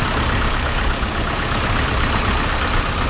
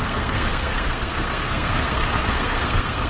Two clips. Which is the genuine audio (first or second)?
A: first